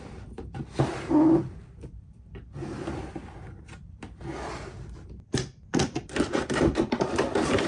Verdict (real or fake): fake